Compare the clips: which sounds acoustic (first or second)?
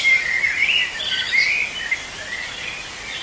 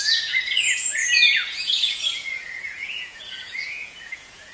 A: first